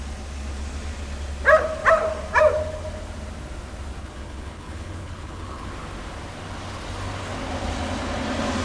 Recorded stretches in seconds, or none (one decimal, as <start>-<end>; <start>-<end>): 0.0-4.0; 5.7-8.6